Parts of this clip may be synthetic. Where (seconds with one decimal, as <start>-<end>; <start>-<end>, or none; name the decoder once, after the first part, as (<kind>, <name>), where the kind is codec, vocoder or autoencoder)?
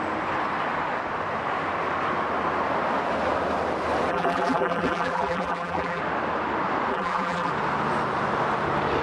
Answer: 4.1-6.0 (vocoder, BigVGAN v2); 6.9-7.5